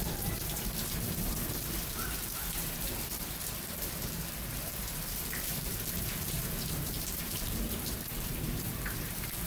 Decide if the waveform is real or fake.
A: fake